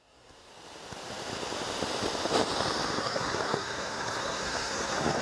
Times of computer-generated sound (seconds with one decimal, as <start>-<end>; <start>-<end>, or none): 0.0-0.5; 3.0-5.2